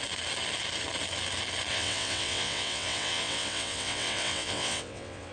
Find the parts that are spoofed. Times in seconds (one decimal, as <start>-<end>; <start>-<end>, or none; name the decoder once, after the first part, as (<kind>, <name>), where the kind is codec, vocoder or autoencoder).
1.7-5.3 (vocoder, WaveNeXt)